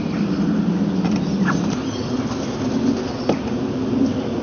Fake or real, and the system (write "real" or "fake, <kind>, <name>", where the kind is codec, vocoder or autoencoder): real